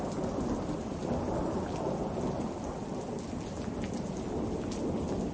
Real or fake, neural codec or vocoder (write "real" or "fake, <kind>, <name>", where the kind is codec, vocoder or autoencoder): real